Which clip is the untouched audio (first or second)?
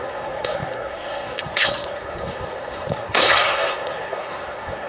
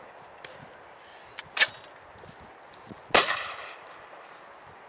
second